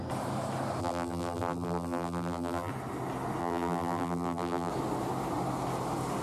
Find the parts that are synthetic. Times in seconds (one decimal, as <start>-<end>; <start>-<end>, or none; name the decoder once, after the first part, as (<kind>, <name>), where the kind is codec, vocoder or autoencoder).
0.8-2.7 (vocoder, BigVGAN v2); 3.4-4.7